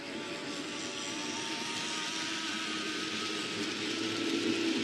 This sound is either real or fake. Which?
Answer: real